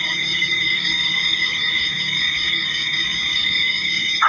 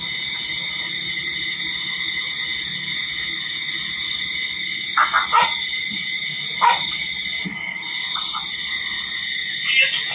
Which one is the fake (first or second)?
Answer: first